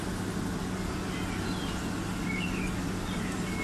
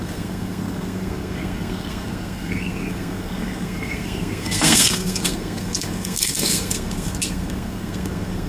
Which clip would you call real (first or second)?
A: first